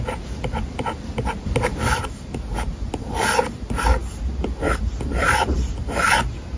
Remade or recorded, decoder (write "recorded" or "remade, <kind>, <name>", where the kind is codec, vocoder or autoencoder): recorded